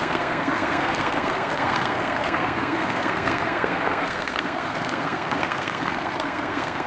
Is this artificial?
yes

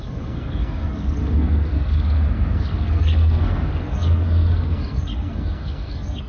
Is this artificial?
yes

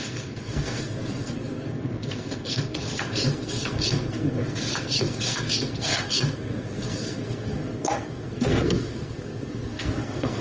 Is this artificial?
yes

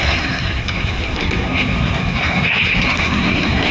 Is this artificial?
yes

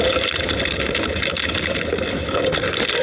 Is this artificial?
no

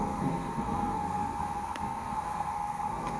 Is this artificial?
yes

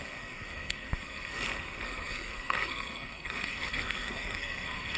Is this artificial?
yes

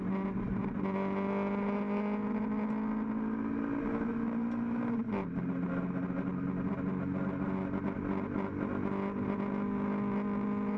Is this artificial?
no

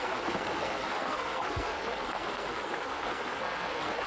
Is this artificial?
yes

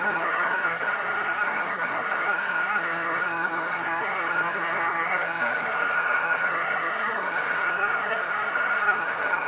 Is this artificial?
yes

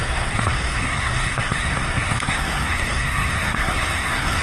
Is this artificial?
yes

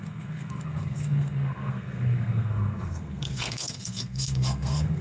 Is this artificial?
yes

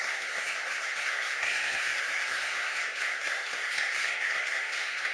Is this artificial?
yes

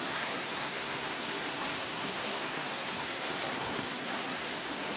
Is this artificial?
yes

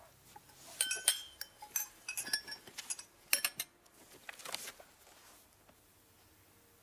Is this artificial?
no